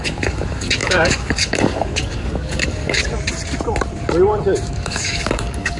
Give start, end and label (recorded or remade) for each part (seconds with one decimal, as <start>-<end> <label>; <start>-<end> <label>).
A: 0.0-3.0 remade; 3.0-4.7 recorded; 4.7-5.8 remade